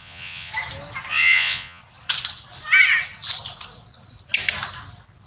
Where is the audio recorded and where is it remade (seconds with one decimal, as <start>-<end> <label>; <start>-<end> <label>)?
0.0-0.5 remade; 0.5-1.1 recorded; 1.1-1.8 remade; 1.8-5.3 recorded